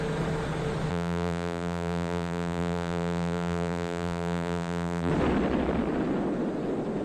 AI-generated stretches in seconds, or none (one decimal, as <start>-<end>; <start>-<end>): 0.9-5.1